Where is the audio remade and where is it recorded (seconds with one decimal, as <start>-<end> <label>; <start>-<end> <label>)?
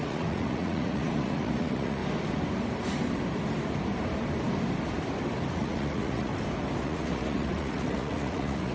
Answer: 0.0-2.0 remade; 2.0-5.5 recorded; 5.5-6.3 remade; 6.3-6.8 recorded; 6.8-8.7 remade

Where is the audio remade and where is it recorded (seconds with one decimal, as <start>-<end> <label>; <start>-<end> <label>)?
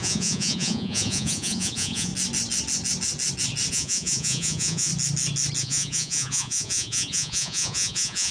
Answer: 0.0-2.1 remade; 2.1-3.7 recorded; 3.7-4.9 remade; 4.9-5.6 recorded; 5.6-8.3 remade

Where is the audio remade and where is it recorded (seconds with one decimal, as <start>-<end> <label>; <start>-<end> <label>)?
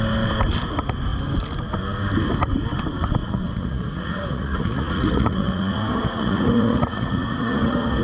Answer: 0.0-3.2 recorded; 3.2-8.0 remade